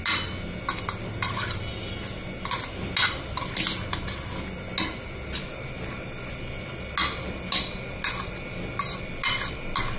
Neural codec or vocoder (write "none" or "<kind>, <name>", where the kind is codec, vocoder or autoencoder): none